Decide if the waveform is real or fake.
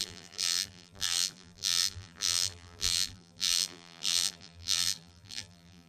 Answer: fake